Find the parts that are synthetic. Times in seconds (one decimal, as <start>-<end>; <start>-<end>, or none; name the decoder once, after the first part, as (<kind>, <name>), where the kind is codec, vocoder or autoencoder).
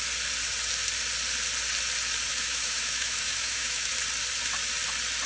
2.3-3.9 (autoencoder, DAC-VAE)